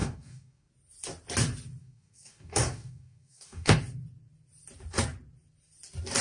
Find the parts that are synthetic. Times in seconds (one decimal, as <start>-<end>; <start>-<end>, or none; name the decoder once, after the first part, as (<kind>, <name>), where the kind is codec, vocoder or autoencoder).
0.0-0.7 (codec, DAC); 1.8-3.8